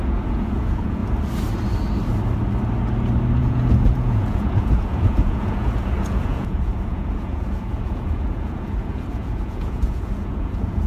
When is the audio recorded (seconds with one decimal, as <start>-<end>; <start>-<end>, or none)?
1.0-3.4